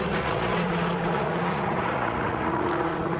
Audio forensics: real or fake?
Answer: fake